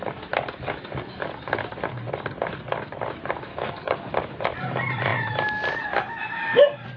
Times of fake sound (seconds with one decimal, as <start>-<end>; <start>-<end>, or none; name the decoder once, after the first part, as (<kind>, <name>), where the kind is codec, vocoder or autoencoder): 3.5-4.1 (codec, DAC)